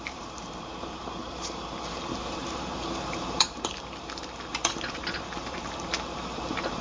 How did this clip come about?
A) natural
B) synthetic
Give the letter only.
B